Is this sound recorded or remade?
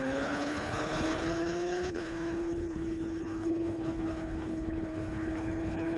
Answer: remade